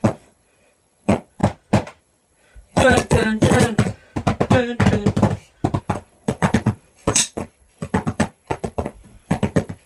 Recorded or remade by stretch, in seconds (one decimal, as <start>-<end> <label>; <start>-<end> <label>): 0.0-1.4 remade; 1.4-2.0 recorded; 2.0-3.9 remade; 3.9-5.8 recorded; 5.8-9.9 remade